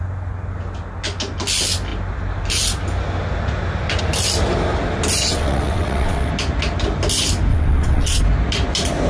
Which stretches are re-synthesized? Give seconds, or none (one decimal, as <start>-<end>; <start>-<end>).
5.2-6.3; 7.5-8.2